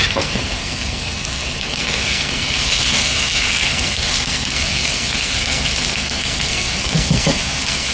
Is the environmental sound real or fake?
fake